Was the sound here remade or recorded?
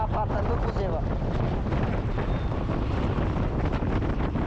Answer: recorded